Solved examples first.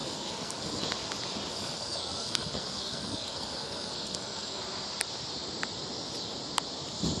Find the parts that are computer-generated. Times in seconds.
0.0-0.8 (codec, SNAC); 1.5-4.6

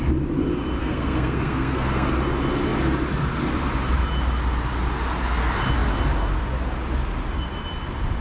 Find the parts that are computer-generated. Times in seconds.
0.8-2.1 (codec, SNAC)

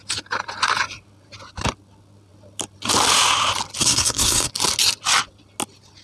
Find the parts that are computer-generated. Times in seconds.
3.8-4.5 (codec, SNAC)

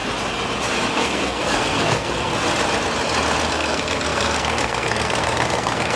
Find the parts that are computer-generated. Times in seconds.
0.9-2.3 (codec, SNAC); 3.5-6.0

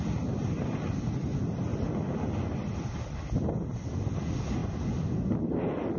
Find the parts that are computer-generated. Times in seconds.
none

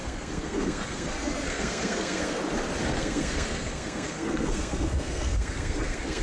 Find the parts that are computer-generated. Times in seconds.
0.0-2.4 (codec, SNAC); 2.8-6.2